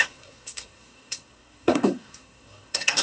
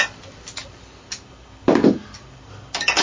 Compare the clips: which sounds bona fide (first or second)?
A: second